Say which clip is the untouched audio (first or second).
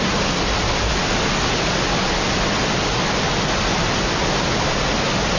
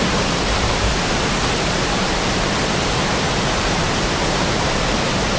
first